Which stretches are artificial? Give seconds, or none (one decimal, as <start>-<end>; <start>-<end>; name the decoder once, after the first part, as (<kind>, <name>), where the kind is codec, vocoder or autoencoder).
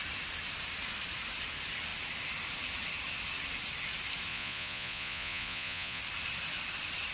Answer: 4.3-6.0 (vocoder, Vocos)